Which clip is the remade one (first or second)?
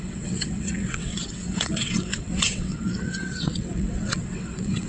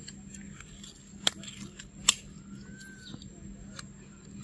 first